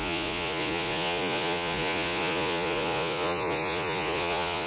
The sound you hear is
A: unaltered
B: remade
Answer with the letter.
B